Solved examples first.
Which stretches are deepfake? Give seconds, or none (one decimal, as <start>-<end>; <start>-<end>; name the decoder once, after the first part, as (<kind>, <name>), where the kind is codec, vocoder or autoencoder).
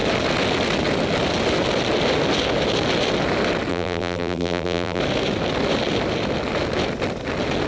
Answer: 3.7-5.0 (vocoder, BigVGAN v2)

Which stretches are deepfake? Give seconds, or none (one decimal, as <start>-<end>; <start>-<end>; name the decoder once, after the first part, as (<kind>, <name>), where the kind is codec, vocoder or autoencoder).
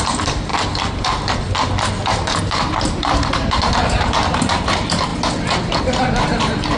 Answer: 0.0-0.5 (vocoder, BigVGAN v2); 2.4-5.1; 5.8-6.8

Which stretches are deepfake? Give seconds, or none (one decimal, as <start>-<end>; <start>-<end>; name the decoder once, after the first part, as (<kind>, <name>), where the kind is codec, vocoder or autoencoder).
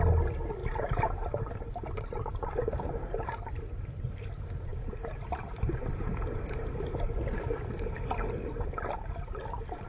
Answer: 0.6-3.6 (vocoder, BigVGAN v2); 4.7-6.7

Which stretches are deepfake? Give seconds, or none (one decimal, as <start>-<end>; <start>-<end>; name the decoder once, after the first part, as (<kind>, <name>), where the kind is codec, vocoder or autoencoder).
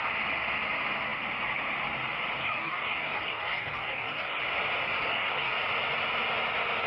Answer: 2.4-4.4 (codec, DAC); 5.0-5.5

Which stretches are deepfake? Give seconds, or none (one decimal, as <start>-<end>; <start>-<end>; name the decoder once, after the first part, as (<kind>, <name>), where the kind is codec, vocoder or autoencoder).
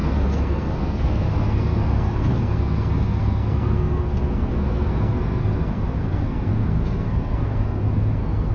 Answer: 0.0-8.5 (codec, SNAC)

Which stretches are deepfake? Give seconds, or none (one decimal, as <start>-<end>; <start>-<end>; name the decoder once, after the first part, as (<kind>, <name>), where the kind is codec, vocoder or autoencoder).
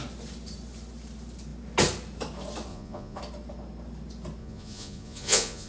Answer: 2.7-3.2 (vocoder, Vocos); 4.4-5.7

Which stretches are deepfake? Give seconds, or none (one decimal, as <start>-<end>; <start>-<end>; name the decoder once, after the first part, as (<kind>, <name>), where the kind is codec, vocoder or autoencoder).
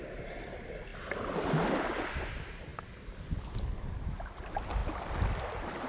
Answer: none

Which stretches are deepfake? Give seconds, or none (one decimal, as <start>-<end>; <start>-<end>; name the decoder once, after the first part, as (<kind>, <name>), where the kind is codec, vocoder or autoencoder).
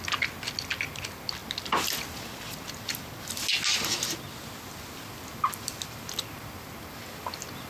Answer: none